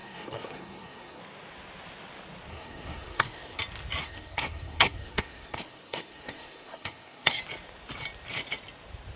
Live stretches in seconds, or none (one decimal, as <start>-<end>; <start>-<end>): 1.2-2.5; 3.6-4.0; 7.4-9.2